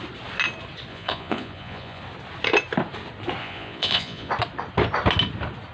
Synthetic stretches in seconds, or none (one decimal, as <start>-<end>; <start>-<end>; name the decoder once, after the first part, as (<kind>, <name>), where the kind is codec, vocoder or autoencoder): 0.9-2.0 (vocoder, Vocos); 3.4-4.3